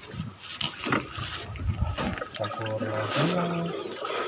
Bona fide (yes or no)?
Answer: yes